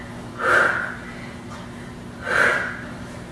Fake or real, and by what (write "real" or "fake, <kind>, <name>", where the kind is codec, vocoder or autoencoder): real